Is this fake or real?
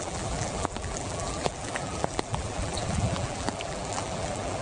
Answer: fake